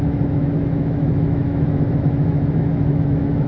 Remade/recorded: remade